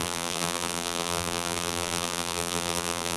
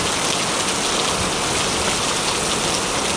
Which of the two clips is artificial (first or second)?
first